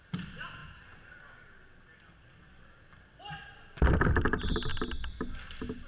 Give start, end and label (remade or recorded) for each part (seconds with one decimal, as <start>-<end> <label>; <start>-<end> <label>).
0.0-5.9 recorded